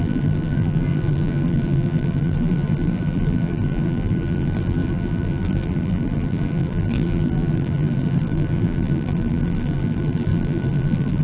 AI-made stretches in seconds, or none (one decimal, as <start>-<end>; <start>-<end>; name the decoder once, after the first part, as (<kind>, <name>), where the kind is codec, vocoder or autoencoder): 0.0-11.2 (vocoder, BigVGAN v2)

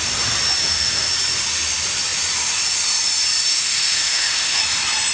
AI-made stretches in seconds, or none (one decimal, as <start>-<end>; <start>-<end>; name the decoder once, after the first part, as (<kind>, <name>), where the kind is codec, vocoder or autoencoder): 0.6-1.1 (autoencoder, DAC-VAE); 3.5-4.6

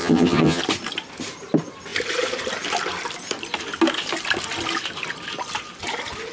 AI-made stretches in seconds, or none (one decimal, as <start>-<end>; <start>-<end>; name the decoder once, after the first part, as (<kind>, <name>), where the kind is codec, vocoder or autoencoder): 0.0-0.6 (vocoder, HiFi-GAN)

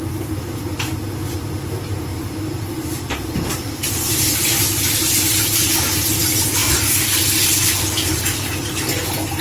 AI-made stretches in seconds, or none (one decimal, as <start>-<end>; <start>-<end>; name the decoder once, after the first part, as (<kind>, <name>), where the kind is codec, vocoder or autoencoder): 2.1-5.7 (vocoder, BigVGAN v2)

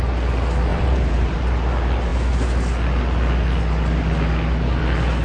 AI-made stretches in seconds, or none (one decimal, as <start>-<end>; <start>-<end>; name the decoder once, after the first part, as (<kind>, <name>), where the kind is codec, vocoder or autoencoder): 0.7-1.4 (vocoder, BigVGAN v2)

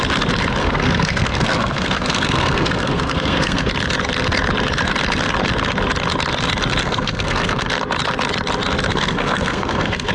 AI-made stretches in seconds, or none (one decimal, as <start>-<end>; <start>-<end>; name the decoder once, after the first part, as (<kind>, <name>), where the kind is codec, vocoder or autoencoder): 0.6-3.7 (codec, SNAC); 6.8-7.7; 8.9-10.1

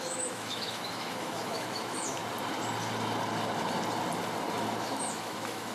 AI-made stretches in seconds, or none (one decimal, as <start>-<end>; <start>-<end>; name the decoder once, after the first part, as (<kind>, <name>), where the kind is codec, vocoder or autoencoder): 0.0-2.2 (autoencoder, DAC-VAE); 4.8-5.7

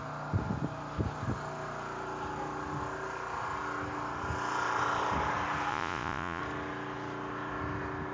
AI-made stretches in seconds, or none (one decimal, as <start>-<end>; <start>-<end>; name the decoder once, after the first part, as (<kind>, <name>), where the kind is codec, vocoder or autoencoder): 5.7-6.4 (vocoder, Vocos)